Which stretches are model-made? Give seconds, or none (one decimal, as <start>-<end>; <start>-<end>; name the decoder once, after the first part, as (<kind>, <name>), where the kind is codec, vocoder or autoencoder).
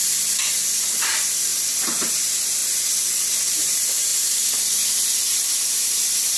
0.0-1.5 (vocoder, BigVGAN v2); 2.1-2.6; 3.5-6.4